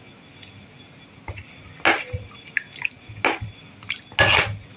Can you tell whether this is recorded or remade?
recorded